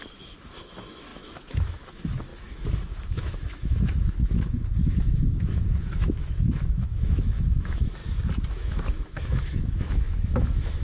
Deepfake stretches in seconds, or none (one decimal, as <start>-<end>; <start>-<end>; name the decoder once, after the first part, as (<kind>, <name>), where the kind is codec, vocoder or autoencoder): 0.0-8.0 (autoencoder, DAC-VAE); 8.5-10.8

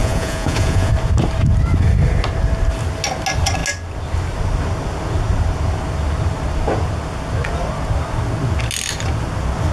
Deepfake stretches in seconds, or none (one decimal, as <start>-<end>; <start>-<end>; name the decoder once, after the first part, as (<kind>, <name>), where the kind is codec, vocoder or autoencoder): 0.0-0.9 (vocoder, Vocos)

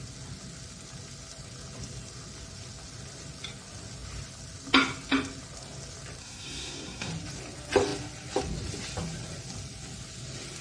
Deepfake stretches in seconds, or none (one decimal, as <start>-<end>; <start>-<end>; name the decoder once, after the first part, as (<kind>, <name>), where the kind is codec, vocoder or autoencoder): 6.2-7.1 (codec, SNAC)

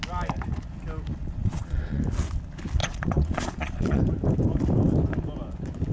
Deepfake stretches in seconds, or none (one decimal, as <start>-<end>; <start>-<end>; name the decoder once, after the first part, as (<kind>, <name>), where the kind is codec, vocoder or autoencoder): 1.1-2.0 (vocoder, Vocos); 2.8-4.0

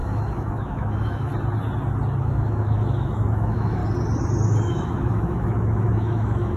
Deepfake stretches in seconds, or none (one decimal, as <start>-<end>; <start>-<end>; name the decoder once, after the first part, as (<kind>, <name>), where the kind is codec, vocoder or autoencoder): 0.0-1.3 (autoencoder, DAC-VAE); 2.2-3.8; 4.7-6.6